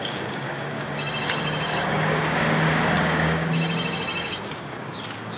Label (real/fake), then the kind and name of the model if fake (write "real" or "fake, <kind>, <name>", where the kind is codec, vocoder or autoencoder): fake, codec, DAC